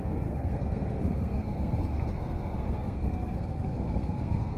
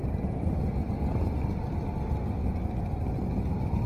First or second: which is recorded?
second